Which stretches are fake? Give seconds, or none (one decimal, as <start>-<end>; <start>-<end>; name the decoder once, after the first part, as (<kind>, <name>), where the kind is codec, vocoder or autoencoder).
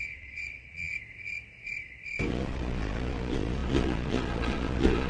0.0-0.9 (vocoder, Vocos); 2.3-5.1